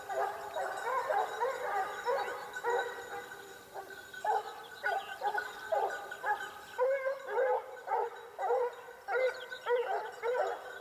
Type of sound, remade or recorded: recorded